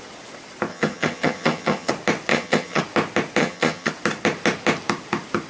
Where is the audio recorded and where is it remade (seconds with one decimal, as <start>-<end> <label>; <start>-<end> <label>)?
0.0-0.7 recorded; 0.7-1.9 remade; 1.9-2.3 recorded; 2.3-2.8 remade; 2.8-3.4 recorded; 3.4-3.9 remade; 3.9-5.5 recorded